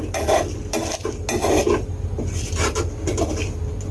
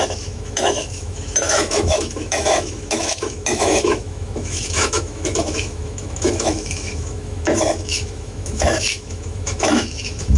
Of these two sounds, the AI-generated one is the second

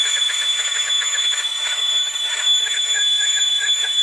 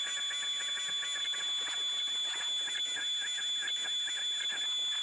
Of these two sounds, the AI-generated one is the first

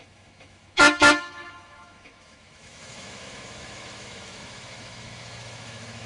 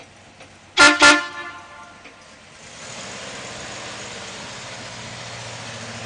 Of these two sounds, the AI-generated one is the first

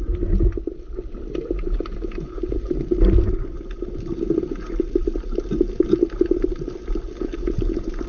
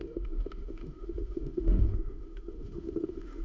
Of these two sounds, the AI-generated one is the second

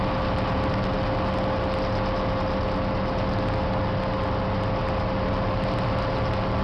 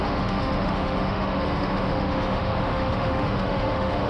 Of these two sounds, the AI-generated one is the second